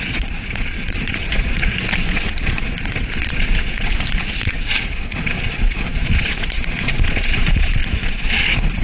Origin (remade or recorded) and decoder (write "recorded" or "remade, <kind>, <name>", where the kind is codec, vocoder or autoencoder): remade, vocoder, Vocos